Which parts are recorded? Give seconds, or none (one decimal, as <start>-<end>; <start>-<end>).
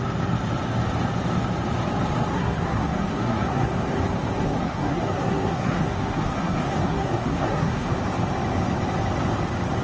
0.0-2.3; 3.7-4.2; 7.9-9.8